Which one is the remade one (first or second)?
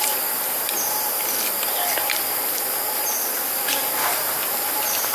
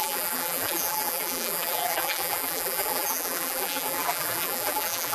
second